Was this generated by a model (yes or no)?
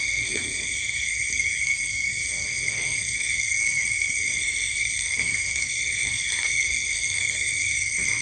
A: yes